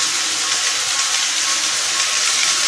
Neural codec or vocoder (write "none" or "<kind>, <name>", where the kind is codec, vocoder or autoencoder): none